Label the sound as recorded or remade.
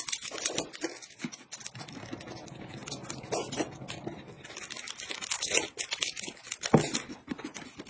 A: recorded